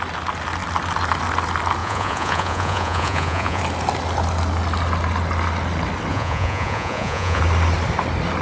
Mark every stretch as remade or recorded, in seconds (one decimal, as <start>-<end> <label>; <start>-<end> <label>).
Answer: 0.0-1.8 recorded; 1.8-3.6 remade; 3.6-6.1 recorded; 6.1-7.4 remade; 7.4-8.4 recorded